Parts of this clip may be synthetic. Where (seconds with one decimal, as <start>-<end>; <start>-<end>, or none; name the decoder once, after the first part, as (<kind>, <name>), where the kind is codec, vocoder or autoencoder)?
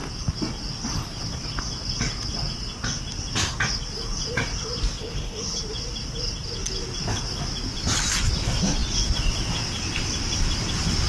5.0-5.6 (codec, HILCodec)